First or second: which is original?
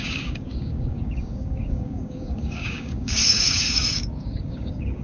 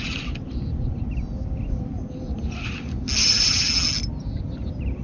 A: second